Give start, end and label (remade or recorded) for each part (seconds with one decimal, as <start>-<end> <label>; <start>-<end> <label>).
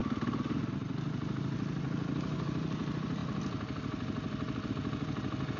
0.0-5.6 recorded